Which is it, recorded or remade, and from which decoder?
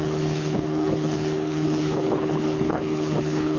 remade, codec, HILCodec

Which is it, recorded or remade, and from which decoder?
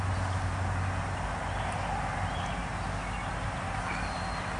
recorded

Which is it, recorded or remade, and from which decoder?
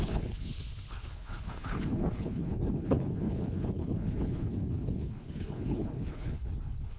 remade, codec, HILCodec